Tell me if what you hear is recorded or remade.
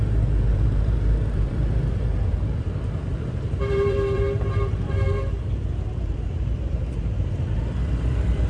remade